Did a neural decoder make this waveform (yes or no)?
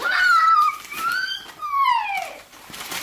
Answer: yes